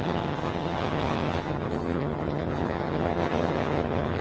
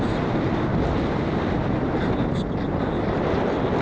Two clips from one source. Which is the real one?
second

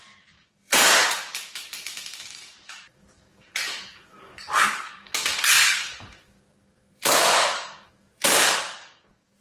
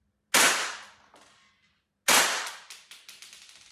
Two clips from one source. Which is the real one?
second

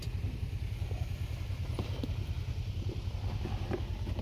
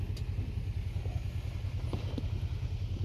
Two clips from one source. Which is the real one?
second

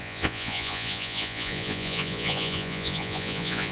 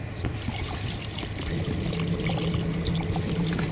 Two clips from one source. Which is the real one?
second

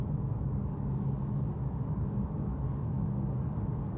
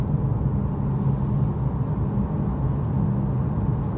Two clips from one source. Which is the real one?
second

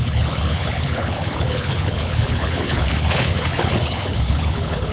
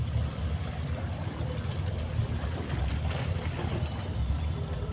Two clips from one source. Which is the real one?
second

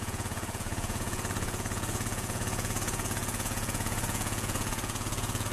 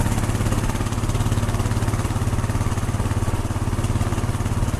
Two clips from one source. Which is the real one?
second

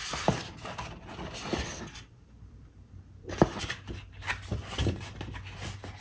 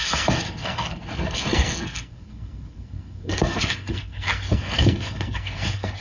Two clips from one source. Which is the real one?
first